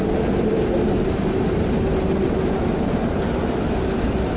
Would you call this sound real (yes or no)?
yes